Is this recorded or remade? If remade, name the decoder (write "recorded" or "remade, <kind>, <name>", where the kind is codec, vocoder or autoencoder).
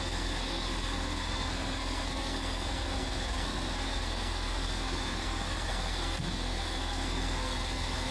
remade, codec, SNAC